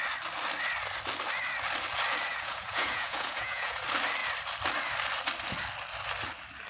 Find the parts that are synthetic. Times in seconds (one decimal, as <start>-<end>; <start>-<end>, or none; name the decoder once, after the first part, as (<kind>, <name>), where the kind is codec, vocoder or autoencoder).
2.3-3.8 (vocoder, Vocos)